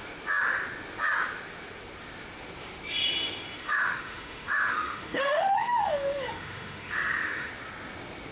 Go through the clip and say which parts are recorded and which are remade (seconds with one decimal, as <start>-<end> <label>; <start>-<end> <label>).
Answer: 0.0-3.6 recorded; 3.6-7.5 remade; 7.5-8.3 recorded